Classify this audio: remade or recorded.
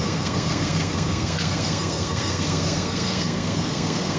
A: remade